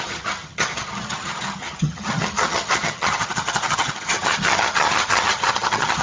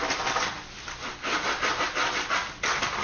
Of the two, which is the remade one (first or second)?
first